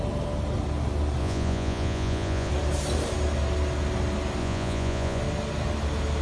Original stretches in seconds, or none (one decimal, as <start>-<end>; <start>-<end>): 0.0-1.2; 2.5-4.4; 5.2-6.2